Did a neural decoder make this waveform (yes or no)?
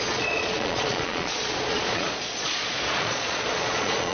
yes